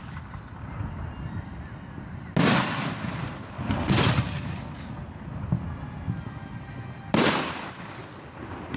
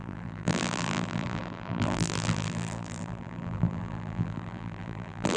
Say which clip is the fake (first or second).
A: second